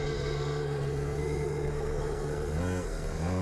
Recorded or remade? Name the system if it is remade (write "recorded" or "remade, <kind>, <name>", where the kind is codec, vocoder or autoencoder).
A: remade, codec, SNAC